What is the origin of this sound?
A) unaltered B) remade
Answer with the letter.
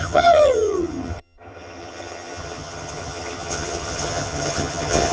B